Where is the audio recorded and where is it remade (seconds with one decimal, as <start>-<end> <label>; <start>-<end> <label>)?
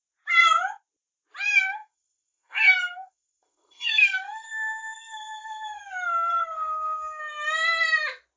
0.0-1.7 recorded; 1.7-5.8 remade; 5.8-6.3 recorded; 6.3-7.2 remade; 7.2-8.4 recorded